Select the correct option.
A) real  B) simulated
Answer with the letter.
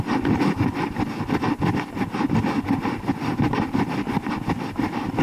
A